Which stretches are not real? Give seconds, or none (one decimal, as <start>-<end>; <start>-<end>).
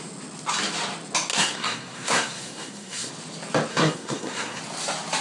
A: 1.3-3.1; 3.7-4.6